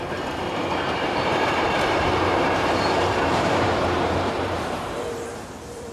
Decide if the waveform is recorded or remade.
remade